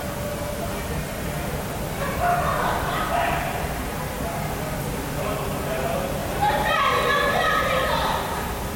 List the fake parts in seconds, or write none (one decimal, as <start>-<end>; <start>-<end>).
6.2-6.8